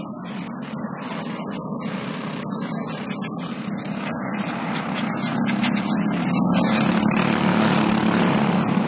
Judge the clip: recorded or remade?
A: recorded